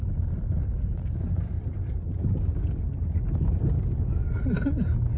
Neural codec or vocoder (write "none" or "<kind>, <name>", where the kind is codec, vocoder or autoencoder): none